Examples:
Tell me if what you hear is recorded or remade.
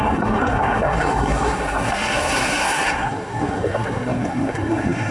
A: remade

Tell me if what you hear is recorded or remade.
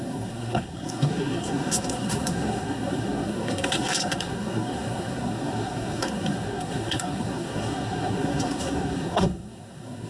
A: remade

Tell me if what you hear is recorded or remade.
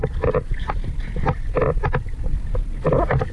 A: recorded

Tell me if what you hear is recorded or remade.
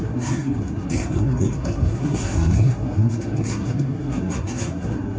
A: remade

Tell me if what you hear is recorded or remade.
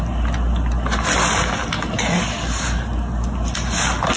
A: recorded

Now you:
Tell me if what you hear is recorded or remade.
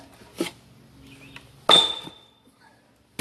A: recorded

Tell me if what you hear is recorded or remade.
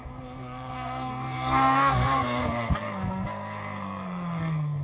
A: remade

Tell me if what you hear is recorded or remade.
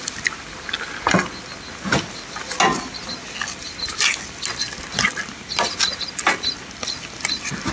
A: recorded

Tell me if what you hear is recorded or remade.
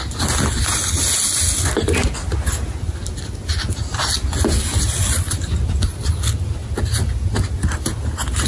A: recorded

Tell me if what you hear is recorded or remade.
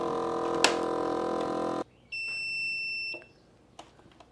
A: recorded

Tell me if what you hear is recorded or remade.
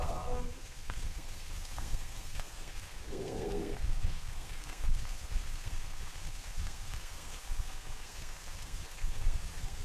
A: remade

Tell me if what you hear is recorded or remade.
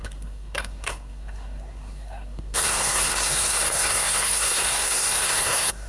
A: remade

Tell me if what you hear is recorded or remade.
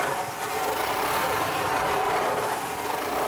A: recorded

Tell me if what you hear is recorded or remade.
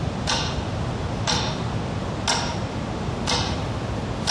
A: recorded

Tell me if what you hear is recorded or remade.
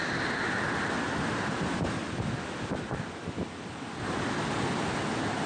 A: recorded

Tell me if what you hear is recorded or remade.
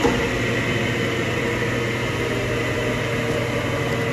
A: recorded